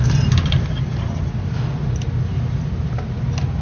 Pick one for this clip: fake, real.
real